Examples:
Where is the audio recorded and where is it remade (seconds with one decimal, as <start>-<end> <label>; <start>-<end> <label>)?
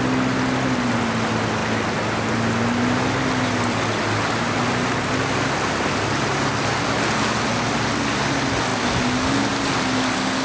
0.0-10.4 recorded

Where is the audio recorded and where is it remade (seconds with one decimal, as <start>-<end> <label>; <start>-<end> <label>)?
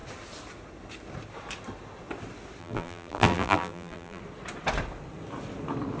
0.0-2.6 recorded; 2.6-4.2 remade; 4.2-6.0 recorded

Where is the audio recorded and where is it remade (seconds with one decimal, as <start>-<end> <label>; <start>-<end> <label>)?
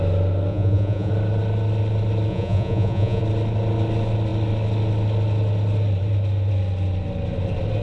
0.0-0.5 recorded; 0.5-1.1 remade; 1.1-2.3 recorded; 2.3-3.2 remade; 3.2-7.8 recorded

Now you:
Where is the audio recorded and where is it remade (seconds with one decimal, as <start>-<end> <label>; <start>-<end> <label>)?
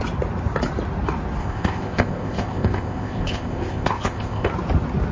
0.0-1.4 recorded; 1.4-4.5 remade; 4.5-5.1 recorded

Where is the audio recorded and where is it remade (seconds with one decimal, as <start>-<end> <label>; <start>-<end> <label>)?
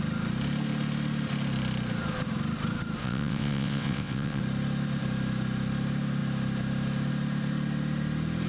0.0-3.0 recorded; 3.0-4.4 remade; 4.4-8.5 recorded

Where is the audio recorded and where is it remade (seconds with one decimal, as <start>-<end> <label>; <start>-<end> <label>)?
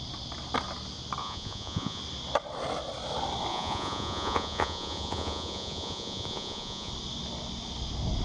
0.0-1.2 recorded; 1.2-2.0 remade; 2.0-3.5 recorded; 3.5-6.9 remade; 6.9-8.2 recorded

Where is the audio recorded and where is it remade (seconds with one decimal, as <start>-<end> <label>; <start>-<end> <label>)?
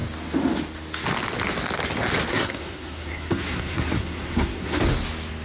0.0-2.3 recorded; 2.3-4.8 remade; 4.8-5.4 recorded